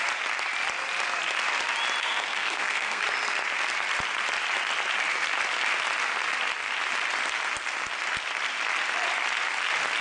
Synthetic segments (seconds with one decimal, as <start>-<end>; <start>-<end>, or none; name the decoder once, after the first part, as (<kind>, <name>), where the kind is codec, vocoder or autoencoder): 2.0-3.0 (codec, SNAC)